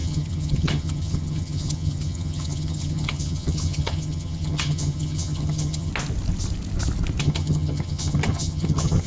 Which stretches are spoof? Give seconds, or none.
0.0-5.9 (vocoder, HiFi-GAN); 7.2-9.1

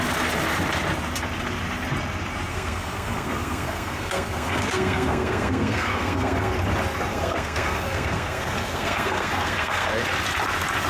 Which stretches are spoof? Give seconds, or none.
2.5-6.5 (codec, SNAC); 7.1-9.9

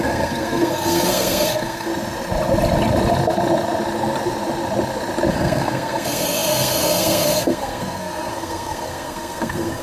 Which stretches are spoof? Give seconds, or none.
0.0-1.9 (codec, SNAC); 5.3-9.8

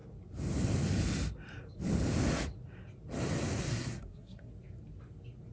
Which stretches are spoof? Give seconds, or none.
3.7-4.5 (codec, SNAC)

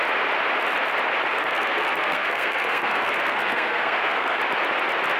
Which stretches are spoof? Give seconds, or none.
1.3-4.4 (codec, SNAC)

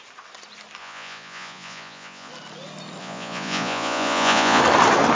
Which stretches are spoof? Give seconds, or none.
0.8-2.3 (vocoder, Vocos); 3.0-4.6

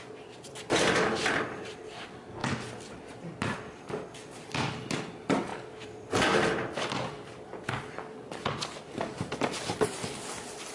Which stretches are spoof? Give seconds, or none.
4.3-4.9 (vocoder, BigVGAN v2); 5.5-10.7

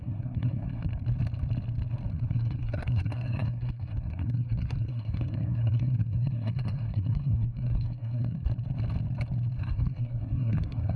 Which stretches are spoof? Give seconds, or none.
0.0-0.9 (codec, SNAC); 2.1-8.5; 9.6-11.0